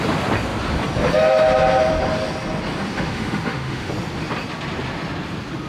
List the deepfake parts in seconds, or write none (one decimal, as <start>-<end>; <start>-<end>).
2.9-3.9